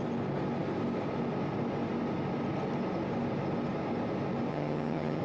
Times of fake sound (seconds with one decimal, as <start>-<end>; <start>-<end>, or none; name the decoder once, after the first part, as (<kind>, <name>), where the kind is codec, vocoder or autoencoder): 4.5-5.2 (vocoder, HiFi-GAN)